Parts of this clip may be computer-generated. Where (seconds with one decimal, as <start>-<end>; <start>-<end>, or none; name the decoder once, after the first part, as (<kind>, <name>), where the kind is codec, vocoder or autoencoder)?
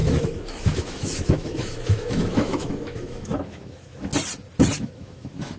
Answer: 0.0-4.1 (autoencoder, DAC-VAE); 4.8-5.6